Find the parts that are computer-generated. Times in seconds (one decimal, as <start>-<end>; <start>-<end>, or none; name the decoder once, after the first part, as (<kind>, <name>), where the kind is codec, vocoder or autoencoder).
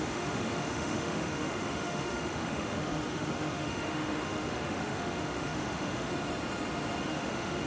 0.0-6.1 (autoencoder, DAC-VAE); 7.0-7.7